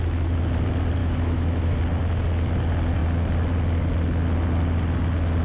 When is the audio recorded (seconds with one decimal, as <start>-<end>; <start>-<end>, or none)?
0.0-1.0; 1.8-5.4